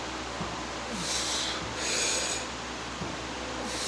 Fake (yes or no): no